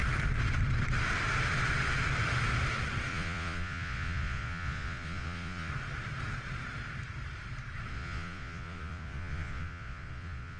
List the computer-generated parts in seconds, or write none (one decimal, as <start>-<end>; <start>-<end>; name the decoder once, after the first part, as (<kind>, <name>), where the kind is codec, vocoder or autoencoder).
3.1-5.7 (vocoder, Vocos); 7.9-10.6